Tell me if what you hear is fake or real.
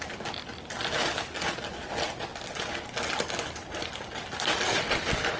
real